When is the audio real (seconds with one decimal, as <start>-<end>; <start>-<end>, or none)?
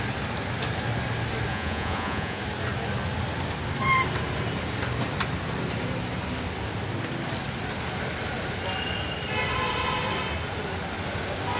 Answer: 0.0-1.5; 2.4-11.6